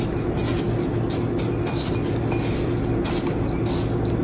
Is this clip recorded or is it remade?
recorded